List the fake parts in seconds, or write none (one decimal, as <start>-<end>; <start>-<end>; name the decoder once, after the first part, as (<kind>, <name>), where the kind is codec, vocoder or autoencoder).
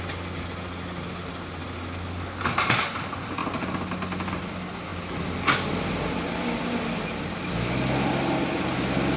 none